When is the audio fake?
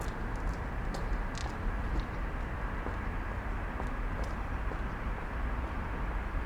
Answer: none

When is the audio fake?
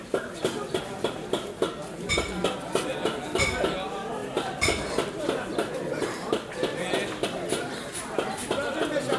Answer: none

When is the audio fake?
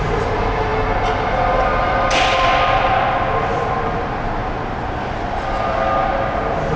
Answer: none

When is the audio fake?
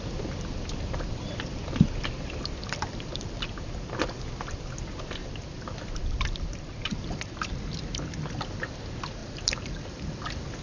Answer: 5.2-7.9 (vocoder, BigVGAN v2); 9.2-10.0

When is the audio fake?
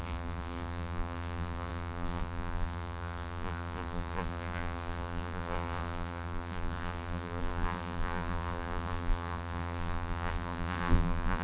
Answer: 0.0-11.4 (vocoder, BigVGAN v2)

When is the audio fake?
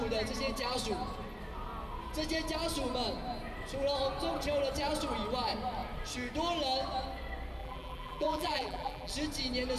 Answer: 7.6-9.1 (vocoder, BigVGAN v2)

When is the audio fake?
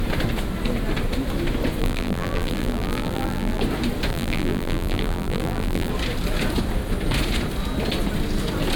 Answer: 1.8-3.6 (vocoder, BigVGAN v2); 4.1-5.9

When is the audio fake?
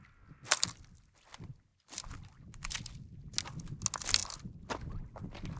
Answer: 4.2-4.9 (vocoder, BigVGAN v2)